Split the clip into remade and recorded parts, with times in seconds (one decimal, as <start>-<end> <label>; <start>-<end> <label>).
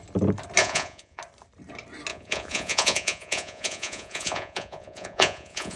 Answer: 0.0-0.6 recorded; 0.6-1.2 remade; 1.2-2.1 recorded; 2.1-5.8 remade